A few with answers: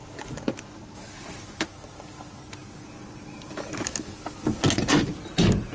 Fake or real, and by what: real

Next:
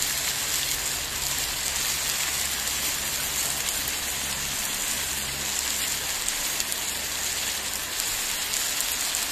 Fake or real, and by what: real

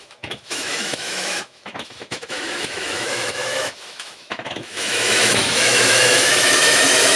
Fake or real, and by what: fake, autoencoder, DAC-VAE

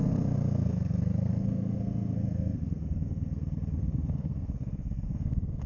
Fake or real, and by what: fake, codec, SNAC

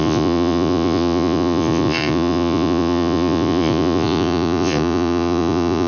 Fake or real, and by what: fake, vocoder, Vocos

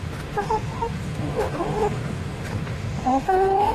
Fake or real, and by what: fake, autoencoder, DAC-VAE